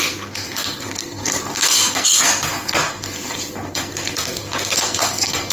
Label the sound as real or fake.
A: fake